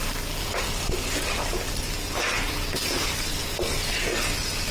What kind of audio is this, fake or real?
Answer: real